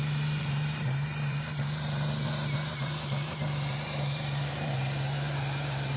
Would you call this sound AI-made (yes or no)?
yes